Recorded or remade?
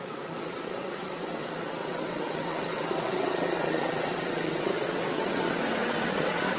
remade